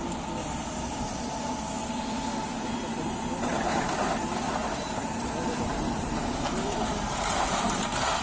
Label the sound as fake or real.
real